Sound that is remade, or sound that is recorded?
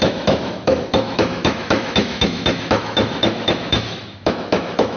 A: remade